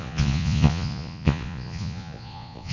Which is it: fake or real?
fake